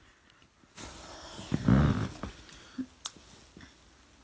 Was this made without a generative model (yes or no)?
yes